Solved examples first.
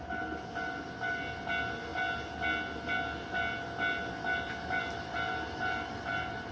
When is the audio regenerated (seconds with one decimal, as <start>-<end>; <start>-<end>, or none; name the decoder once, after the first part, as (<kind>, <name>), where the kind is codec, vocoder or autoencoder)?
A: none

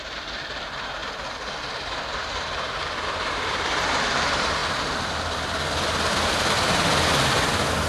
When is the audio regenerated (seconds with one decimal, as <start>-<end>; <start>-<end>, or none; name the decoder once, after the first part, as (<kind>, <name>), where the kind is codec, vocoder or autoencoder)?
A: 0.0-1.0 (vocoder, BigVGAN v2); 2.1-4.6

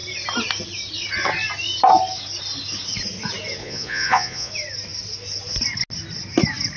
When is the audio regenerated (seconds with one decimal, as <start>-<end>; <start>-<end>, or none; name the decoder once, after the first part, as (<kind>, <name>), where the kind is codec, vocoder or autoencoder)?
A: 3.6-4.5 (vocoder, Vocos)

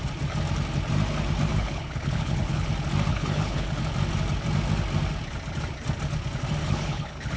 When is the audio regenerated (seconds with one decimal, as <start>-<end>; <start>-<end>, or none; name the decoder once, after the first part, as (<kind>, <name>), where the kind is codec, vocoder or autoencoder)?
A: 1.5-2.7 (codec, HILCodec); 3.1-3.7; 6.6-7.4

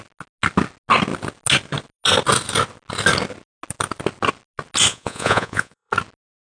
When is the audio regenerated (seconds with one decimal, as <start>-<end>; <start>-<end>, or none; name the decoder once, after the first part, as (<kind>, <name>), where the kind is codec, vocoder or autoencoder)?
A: 4.9-5.9 (vocoder, Vocos)

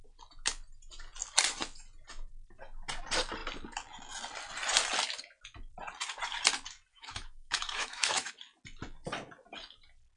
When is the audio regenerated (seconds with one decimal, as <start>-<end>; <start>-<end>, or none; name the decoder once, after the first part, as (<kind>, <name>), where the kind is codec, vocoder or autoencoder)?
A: 6.9-8.3 (autoencoder, DAC-VAE)